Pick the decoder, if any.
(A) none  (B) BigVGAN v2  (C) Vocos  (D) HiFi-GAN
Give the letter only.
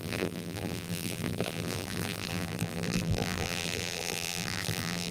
B